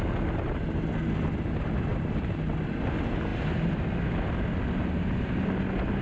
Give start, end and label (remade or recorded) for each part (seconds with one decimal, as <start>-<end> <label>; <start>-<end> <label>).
0.0-6.0 recorded

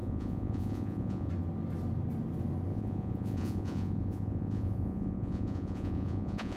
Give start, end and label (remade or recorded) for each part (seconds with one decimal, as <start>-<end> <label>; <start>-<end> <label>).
0.0-1.3 remade; 1.3-2.7 recorded; 2.7-6.6 remade